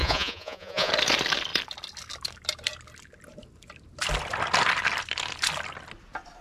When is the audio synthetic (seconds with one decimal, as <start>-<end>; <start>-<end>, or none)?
0.0-0.9